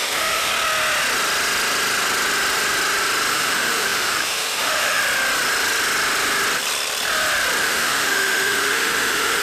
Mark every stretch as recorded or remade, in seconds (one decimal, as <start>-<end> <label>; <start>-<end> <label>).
0.0-0.5 remade; 0.5-3.3 recorded; 3.3-5.0 remade; 5.0-7.6 recorded; 7.6-9.4 remade